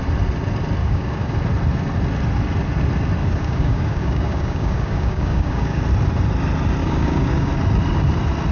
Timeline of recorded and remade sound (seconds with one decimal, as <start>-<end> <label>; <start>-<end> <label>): 0.0-0.8 recorded; 0.8-1.3 remade; 1.3-3.2 recorded; 3.2-5.8 remade; 5.8-6.8 recorded; 6.8-7.5 remade; 7.5-8.5 recorded